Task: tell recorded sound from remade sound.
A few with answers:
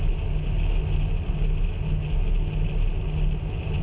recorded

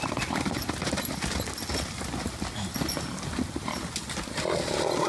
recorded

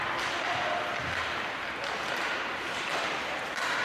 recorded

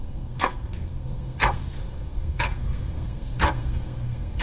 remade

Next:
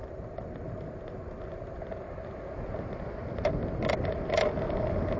recorded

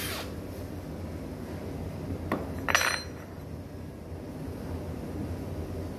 recorded